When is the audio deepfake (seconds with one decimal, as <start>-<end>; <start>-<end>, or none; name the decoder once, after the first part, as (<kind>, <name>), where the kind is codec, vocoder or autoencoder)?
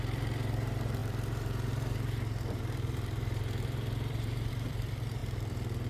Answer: 0.0-5.9 (vocoder, BigVGAN v2)